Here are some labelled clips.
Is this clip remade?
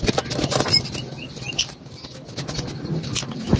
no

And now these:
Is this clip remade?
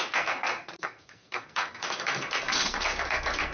yes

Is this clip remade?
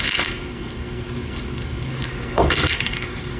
yes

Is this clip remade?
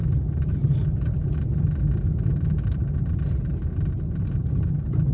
no